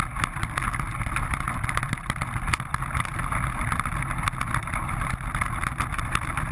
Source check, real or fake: real